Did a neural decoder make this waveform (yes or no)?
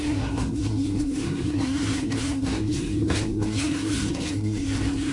yes